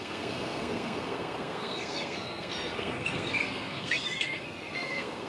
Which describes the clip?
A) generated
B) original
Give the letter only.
A